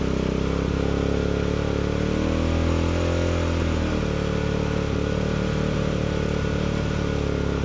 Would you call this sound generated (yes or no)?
no